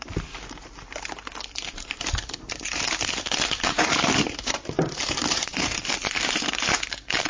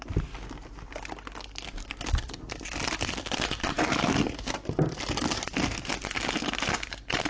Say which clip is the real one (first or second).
second